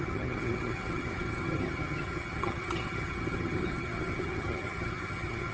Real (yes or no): no